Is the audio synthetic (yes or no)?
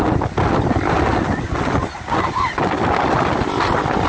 no